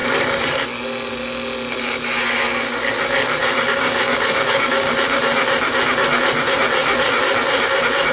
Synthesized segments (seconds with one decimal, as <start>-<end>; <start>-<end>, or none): 3.4-4.9

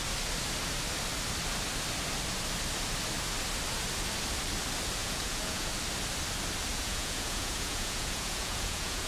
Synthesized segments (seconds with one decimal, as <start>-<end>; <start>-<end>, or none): 5.0-5.7; 6.7-9.1

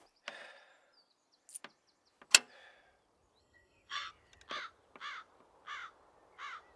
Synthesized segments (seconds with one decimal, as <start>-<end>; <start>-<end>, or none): 3.4-4.1